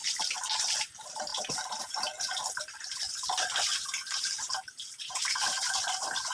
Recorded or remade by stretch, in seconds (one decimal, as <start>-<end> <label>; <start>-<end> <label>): 0.0-0.9 remade; 0.9-1.3 recorded; 1.3-1.8 remade; 1.8-6.3 recorded